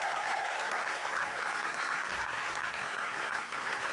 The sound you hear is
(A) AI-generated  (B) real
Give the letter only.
A